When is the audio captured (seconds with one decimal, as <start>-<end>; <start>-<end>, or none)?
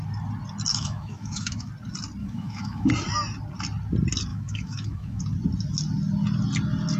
0.0-0.7; 1.7-2.2; 2.9-4.3; 5.2-7.0